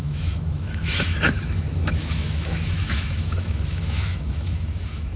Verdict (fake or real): fake